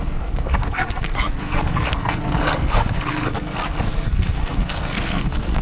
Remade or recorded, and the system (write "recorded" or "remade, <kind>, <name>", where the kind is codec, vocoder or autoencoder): remade, codec, SNAC